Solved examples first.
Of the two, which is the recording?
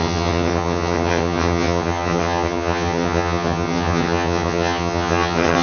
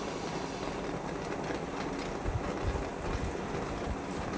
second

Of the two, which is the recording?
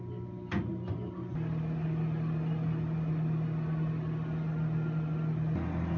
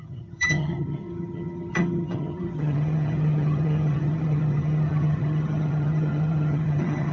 first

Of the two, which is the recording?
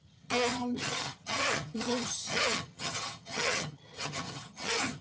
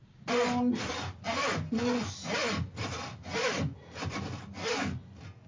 second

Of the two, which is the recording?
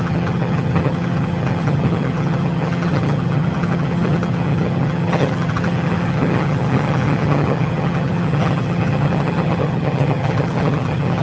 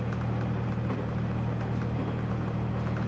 second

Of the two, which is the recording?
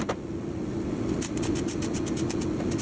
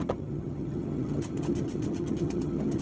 first